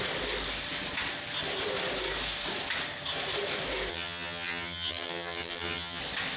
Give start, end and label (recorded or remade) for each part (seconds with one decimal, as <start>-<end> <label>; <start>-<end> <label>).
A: 0.0-3.9 recorded; 3.9-6.0 remade; 6.0-6.4 recorded